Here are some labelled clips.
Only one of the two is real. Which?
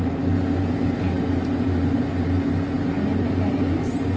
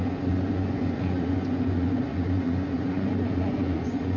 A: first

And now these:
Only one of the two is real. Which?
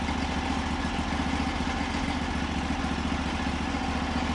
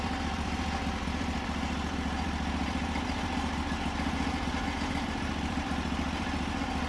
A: first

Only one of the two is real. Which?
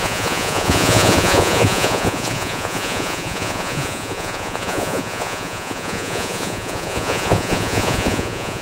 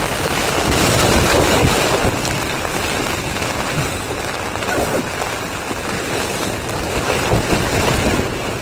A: second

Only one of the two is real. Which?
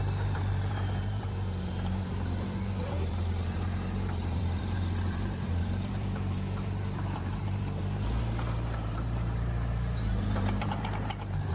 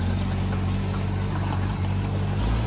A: second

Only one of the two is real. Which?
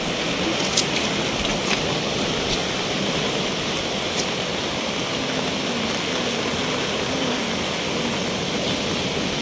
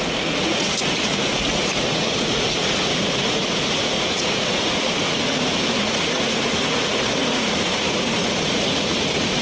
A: first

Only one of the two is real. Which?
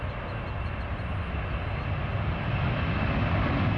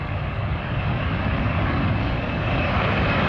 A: first